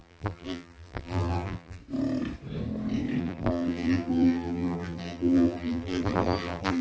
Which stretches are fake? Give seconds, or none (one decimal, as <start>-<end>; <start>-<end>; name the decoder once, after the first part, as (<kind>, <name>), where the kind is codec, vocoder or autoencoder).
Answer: 0.0-1.8 (vocoder, BigVGAN v2); 3.2-6.8